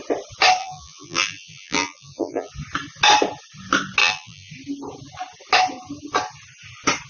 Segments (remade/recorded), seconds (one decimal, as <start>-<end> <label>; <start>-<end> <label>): 0.0-0.6 recorded; 0.6-2.5 remade; 2.5-4.0 recorded; 4.0-4.5 remade; 4.5-7.1 recorded